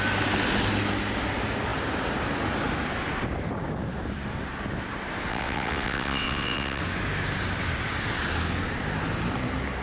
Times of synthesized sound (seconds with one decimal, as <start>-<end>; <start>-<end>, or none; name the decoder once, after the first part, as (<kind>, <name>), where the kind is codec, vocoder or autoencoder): 5.3-6.8 (vocoder, WaveNeXt)